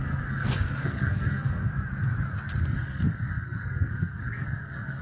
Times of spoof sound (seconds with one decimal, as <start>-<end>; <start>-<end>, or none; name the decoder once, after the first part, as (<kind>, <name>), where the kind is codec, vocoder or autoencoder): 0.0-1.7 (codec, SNAC); 2.6-5.0